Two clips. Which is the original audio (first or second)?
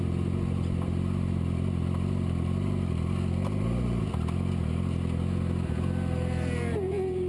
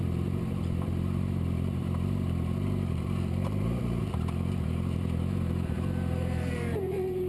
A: first